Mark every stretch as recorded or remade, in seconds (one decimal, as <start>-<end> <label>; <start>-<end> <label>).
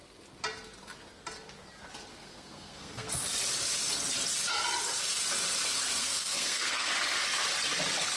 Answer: 0.0-2.1 recorded; 2.1-3.1 remade; 3.1-6.0 recorded; 6.0-6.9 remade; 6.9-8.2 recorded